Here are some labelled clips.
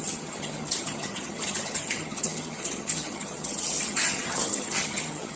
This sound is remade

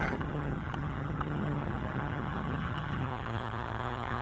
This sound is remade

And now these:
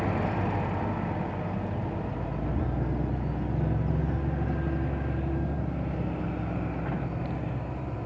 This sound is recorded